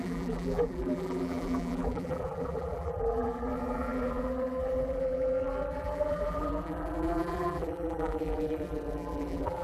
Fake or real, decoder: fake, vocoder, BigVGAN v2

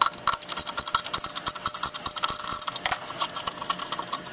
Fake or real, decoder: real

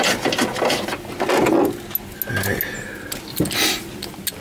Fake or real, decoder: real